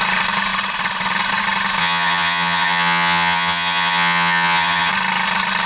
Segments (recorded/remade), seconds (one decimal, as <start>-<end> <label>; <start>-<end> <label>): 0.0-1.8 recorded; 1.8-4.9 remade; 4.9-5.7 recorded